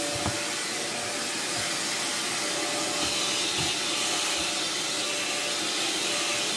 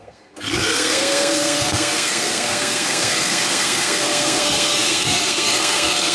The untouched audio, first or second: first